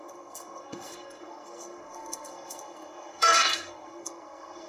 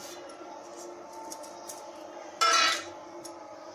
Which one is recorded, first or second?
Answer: second